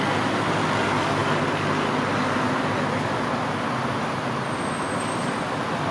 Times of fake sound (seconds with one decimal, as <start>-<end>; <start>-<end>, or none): none